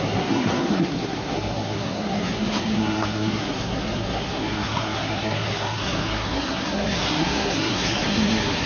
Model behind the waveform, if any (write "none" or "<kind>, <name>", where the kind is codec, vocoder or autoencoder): codec, SNAC